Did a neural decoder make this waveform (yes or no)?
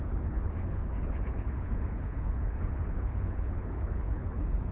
yes